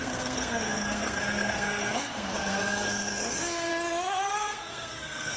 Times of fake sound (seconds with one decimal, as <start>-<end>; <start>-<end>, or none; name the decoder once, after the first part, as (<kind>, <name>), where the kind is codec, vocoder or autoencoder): 0.0-3.7 (codec, SNAC); 4.3-5.4